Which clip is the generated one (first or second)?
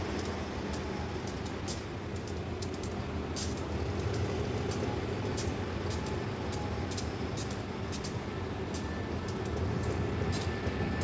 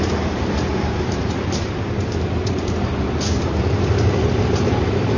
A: second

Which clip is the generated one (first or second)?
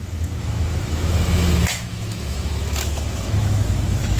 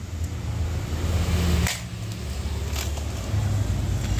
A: first